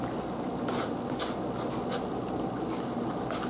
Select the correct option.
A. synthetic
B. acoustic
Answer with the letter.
B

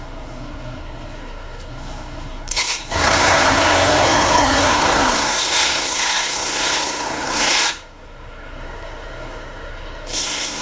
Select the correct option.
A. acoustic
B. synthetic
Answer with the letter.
B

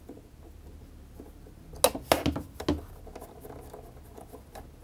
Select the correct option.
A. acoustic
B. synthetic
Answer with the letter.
A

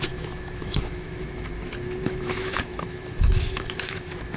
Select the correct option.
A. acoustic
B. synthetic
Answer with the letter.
B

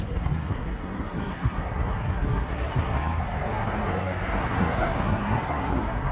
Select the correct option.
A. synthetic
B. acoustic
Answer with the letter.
A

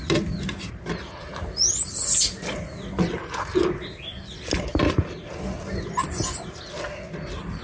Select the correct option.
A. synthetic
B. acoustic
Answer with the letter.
B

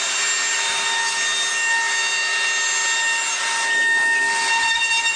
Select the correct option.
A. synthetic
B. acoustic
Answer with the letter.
B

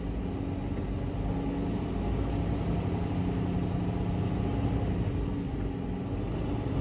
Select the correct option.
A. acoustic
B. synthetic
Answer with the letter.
A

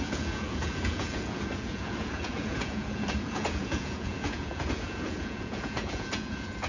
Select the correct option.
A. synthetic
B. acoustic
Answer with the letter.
A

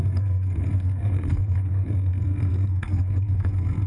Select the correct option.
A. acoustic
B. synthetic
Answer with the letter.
B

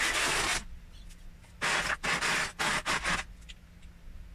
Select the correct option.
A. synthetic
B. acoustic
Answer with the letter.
B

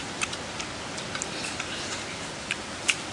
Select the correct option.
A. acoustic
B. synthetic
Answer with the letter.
A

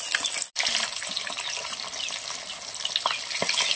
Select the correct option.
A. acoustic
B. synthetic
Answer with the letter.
A